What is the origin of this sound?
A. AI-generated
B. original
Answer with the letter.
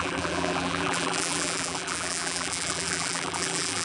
A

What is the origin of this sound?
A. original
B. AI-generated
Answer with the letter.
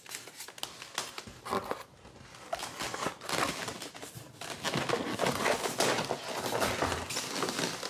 A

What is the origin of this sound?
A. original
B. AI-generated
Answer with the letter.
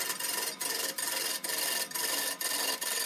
B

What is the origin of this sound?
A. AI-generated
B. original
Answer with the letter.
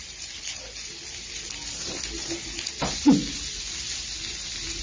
B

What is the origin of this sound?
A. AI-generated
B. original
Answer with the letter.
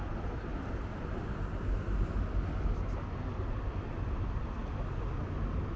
B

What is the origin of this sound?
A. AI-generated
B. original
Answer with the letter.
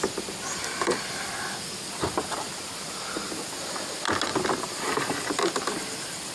B